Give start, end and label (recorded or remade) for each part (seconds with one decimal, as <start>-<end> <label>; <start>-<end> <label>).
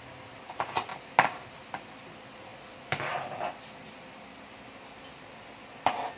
0.0-6.2 recorded